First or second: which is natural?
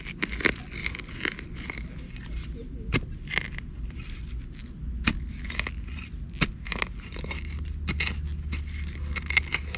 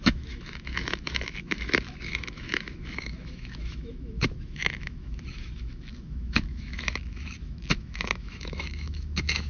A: first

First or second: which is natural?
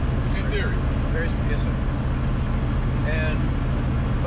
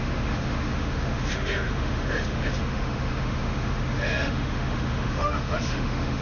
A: first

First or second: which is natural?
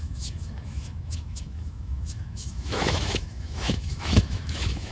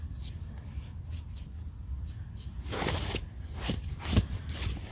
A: second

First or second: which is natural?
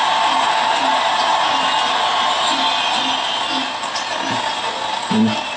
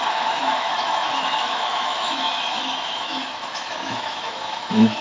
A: first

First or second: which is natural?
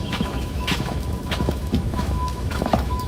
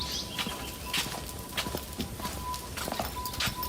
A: second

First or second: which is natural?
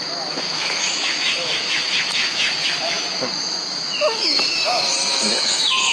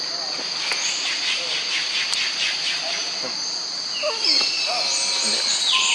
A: second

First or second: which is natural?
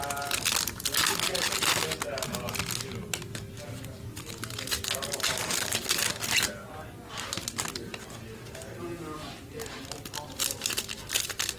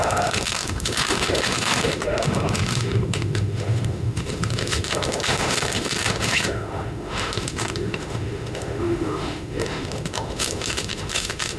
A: first